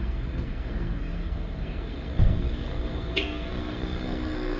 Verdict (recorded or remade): remade